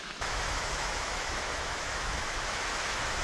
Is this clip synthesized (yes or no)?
yes